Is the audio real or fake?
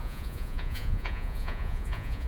fake